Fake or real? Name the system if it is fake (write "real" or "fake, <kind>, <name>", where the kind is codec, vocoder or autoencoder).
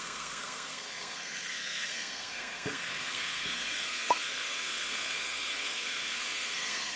fake, codec, SNAC